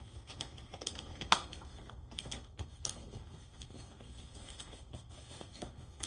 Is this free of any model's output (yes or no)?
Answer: no